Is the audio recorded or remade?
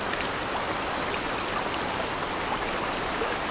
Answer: recorded